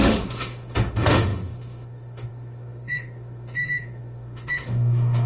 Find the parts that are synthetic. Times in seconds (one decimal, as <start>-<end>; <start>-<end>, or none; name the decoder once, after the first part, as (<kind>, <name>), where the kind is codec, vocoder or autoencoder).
0.0-5.3 (autoencoder, DAC-VAE)